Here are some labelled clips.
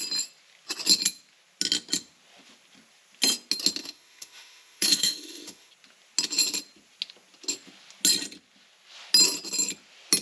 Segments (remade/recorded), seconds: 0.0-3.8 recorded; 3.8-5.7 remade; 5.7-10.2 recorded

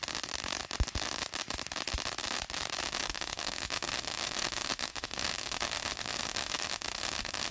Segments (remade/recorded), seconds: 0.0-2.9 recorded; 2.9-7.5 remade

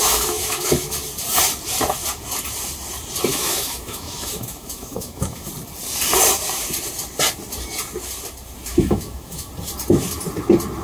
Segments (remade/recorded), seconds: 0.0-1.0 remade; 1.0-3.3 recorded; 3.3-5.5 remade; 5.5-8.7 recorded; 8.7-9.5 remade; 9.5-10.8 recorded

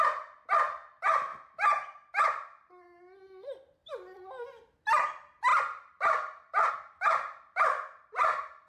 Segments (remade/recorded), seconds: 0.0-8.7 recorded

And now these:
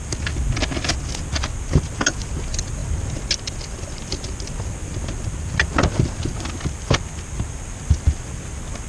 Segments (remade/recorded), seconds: 0.0-8.9 recorded